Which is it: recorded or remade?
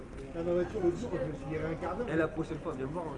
recorded